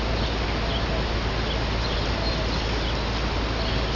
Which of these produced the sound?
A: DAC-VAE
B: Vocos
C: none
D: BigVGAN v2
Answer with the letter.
C